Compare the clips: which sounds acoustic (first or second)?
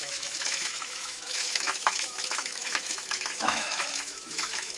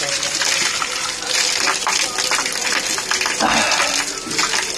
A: second